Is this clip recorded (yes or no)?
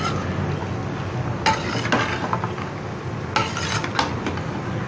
yes